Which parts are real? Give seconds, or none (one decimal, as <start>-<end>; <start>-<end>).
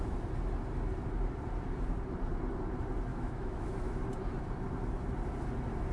0.0-3.1; 4.0-5.9